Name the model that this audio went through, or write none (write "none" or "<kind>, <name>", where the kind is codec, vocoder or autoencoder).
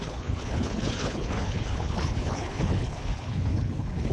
codec, HILCodec